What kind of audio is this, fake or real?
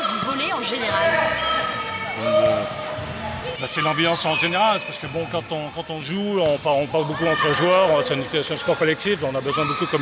real